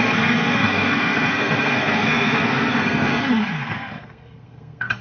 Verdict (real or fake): fake